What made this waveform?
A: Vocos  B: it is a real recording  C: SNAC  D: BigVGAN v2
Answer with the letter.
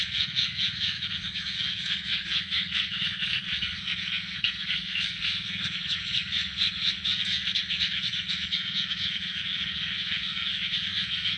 C